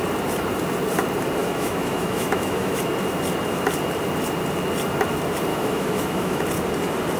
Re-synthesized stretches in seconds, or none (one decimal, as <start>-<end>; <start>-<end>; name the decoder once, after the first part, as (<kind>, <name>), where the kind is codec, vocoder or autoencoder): 1.4-2.8 (autoencoder, DAC-VAE); 5.5-6.4